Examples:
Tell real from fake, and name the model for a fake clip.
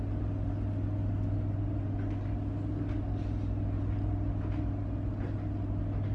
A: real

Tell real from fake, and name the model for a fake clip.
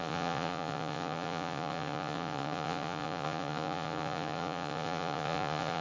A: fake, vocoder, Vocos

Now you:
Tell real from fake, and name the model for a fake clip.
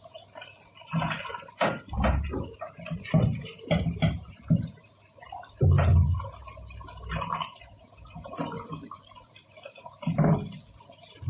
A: real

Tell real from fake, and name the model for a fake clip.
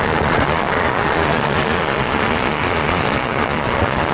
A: fake, vocoder, Vocos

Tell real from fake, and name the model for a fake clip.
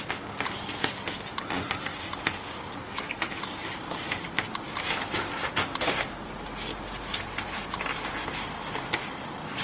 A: real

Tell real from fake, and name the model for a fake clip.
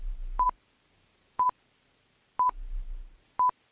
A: real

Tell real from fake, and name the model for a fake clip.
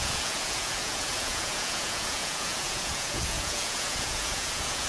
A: fake, vocoder, Vocos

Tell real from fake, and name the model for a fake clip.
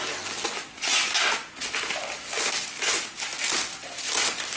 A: real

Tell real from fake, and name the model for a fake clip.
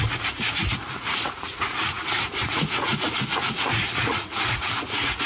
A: fake, vocoder, Vocos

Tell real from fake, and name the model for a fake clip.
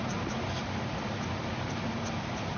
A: real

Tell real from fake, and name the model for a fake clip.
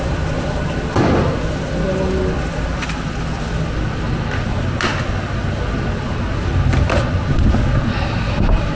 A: real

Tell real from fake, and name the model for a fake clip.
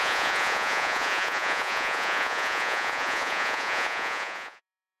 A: fake, vocoder, Vocos